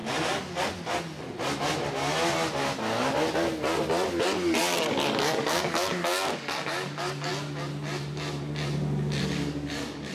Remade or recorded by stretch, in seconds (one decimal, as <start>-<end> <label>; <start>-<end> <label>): 0.0-4.6 recorded; 4.6-7.3 remade; 7.3-9.2 recorded; 9.2-10.1 remade